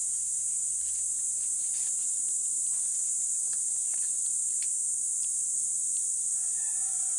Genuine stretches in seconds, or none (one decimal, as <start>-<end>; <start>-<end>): none